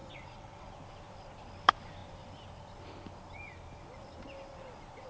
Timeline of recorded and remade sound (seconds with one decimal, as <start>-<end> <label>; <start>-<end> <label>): 0.0-0.7 remade; 0.7-5.1 recorded